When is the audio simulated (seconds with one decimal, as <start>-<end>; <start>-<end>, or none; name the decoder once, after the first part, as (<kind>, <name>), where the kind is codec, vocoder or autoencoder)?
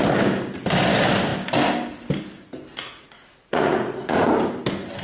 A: 2.7-4.3 (vocoder, Vocos)